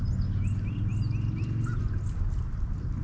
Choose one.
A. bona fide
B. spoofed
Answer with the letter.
A